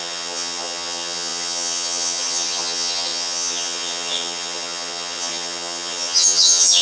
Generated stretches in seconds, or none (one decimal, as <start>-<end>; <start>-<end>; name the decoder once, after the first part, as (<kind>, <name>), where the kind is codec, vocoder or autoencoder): 0.0-6.8 (vocoder, HiFi-GAN)